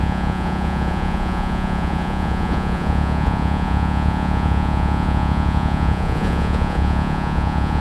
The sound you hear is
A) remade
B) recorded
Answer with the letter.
A